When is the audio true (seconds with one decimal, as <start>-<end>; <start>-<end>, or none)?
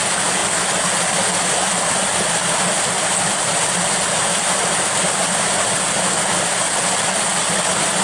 0.0-8.0